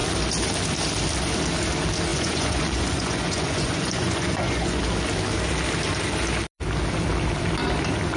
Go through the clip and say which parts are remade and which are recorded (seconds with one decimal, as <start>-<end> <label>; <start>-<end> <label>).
0.0-2.1 recorded; 2.1-4.8 remade; 4.8-8.2 recorded